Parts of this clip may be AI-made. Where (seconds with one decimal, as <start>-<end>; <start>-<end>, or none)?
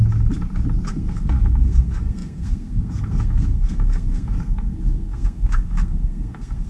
0.9-6.7